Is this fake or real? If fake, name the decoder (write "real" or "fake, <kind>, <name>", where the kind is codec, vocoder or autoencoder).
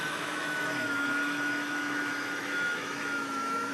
fake, autoencoder, DAC-VAE